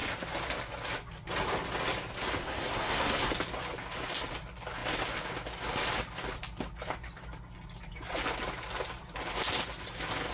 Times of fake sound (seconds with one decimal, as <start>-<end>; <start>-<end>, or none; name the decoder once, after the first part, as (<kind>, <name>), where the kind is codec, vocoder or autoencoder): 2.4-3.3 (codec, SNAC)